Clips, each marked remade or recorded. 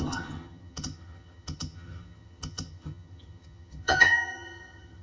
remade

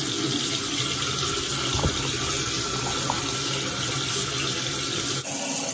recorded